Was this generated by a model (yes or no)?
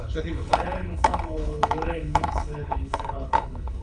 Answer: yes